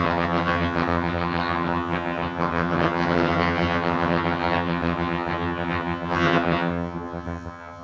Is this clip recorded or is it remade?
remade